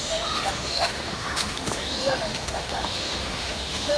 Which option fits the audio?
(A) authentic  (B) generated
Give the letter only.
B